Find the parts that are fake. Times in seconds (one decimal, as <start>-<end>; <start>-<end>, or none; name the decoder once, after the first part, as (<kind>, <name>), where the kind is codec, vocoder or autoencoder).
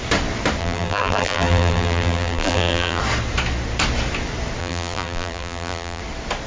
0.6-3.0 (vocoder, BigVGAN v2); 4.6-6.0